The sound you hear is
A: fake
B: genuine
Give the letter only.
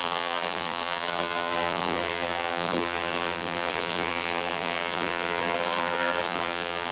A